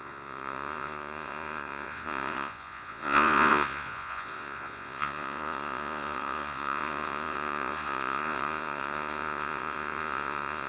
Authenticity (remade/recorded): remade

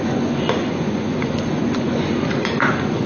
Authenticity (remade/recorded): remade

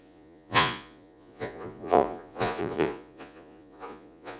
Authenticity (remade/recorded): remade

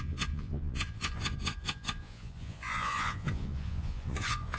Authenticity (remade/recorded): remade